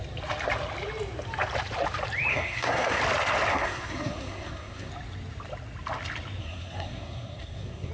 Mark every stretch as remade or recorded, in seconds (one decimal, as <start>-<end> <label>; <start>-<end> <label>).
0.0-2.3 recorded; 2.3-3.0 remade; 3.0-3.5 recorded; 3.5-4.9 remade; 4.9-6.4 recorded; 6.4-7.9 remade